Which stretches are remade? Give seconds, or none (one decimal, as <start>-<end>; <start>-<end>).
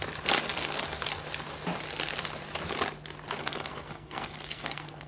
3.4-5.1